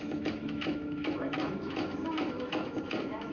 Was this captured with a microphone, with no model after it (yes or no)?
no